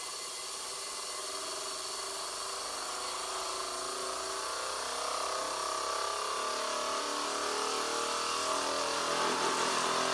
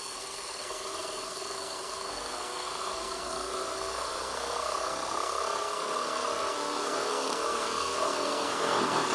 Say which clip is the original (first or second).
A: first